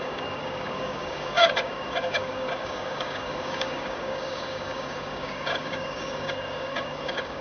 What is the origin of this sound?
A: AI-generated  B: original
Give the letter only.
A